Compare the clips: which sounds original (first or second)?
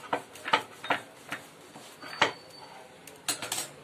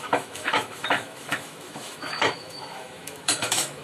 first